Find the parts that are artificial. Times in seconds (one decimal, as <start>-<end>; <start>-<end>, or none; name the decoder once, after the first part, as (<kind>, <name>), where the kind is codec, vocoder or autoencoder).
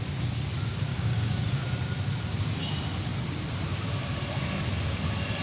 0.9-1.4 (codec, DAC)